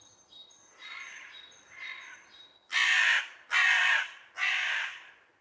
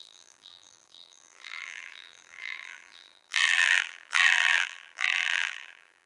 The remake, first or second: second